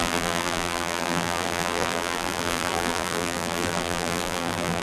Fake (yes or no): yes